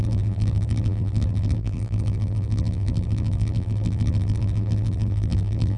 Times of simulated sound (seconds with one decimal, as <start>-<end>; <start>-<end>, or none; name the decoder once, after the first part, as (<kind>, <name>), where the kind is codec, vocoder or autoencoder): 0.0-5.8 (vocoder, BigVGAN v2)